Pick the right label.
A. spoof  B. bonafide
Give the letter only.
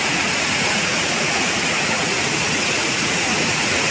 A